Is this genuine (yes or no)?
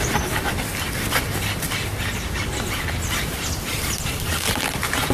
yes